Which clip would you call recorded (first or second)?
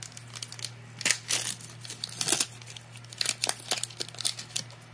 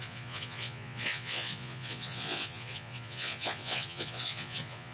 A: first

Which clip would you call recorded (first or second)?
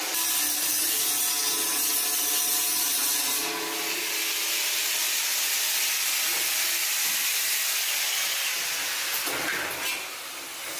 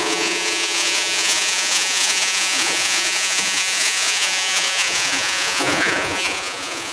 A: first